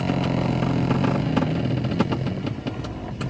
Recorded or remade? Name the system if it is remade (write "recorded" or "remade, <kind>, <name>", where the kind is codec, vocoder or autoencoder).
recorded